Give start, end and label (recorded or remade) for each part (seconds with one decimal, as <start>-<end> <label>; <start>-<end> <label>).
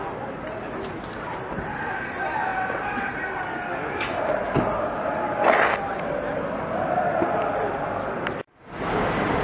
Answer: 0.0-9.4 recorded